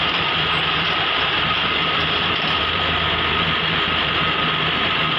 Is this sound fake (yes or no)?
yes